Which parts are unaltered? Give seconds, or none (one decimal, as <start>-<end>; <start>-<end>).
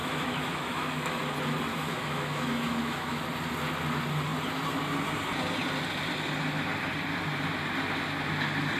1.2-1.7; 3.2-8.8